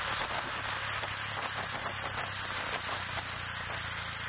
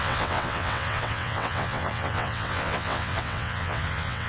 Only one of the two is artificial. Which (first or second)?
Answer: second